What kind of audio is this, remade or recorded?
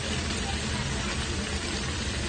recorded